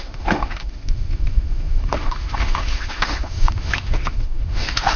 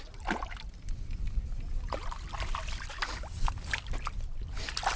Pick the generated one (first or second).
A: first